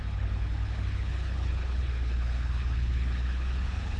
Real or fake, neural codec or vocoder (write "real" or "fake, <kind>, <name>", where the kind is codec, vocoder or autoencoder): fake, codec, HILCodec